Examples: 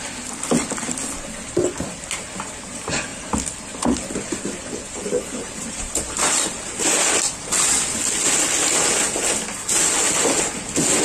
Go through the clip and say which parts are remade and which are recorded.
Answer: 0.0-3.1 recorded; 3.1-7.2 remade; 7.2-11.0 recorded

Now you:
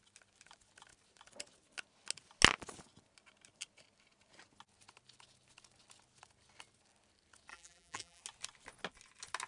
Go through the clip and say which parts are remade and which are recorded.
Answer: 0.0-7.5 recorded; 7.5-8.2 remade; 8.2-9.5 recorded

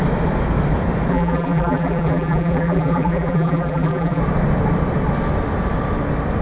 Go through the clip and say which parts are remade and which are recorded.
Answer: 0.0-1.1 recorded; 1.1-4.2 remade; 4.2-6.4 recorded

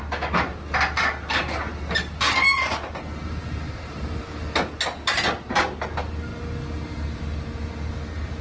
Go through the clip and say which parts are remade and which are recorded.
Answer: 0.0-3.4 recorded; 3.4-4.4 remade; 4.4-8.4 recorded